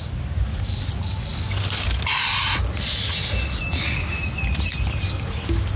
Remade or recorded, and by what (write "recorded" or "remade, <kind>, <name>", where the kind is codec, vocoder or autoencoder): recorded